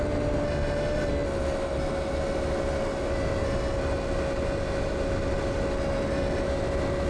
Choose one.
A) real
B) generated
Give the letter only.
A